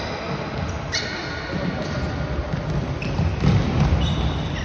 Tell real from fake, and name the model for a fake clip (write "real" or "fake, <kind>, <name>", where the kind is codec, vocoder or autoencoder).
real